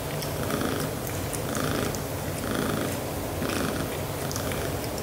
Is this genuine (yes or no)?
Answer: yes